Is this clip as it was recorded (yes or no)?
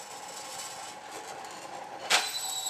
yes